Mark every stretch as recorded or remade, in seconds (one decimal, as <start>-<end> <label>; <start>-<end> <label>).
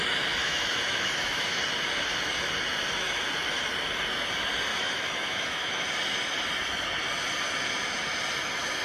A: 0.0-0.4 recorded; 0.4-1.6 remade; 1.6-4.7 recorded; 4.7-5.8 remade; 5.8-8.8 recorded